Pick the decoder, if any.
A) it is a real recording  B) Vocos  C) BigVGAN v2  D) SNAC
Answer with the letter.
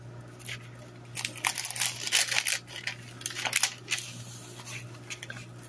A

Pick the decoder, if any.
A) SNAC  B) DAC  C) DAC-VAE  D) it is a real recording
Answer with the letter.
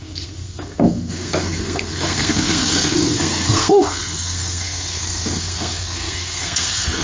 A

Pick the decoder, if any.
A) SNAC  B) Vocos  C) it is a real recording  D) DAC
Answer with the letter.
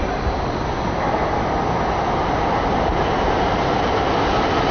C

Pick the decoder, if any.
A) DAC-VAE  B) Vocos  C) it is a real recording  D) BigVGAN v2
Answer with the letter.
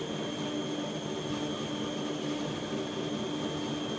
C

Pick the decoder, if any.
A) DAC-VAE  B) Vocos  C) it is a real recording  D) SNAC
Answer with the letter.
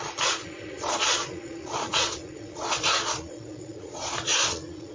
B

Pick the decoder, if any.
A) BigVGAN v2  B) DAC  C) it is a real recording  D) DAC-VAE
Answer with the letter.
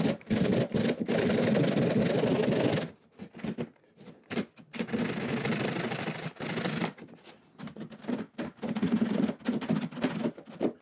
C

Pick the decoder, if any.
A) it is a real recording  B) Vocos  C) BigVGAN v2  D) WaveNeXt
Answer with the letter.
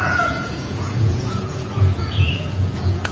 B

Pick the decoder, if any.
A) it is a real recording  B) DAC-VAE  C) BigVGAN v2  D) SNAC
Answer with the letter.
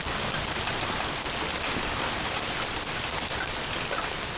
A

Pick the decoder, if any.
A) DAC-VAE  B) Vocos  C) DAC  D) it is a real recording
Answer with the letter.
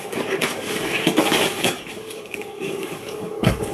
C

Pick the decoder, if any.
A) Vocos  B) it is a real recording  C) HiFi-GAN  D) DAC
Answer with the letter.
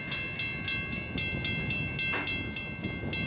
B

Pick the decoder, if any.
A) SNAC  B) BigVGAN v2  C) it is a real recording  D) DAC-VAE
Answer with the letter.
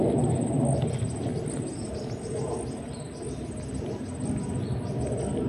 C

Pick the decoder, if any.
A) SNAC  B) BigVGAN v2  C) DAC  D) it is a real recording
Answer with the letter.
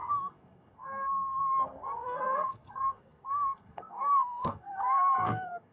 A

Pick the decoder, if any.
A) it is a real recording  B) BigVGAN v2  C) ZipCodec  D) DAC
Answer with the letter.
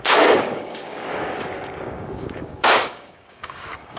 D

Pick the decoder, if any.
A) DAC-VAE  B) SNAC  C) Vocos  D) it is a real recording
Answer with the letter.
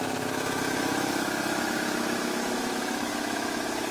A